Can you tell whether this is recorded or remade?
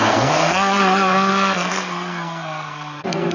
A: remade